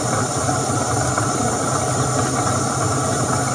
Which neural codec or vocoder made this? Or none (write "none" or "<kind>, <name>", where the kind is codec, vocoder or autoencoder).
none